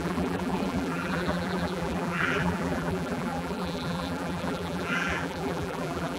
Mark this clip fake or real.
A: fake